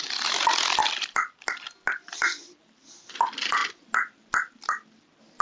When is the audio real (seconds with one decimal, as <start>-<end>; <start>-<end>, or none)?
0.0-5.4